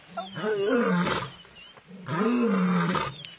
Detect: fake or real real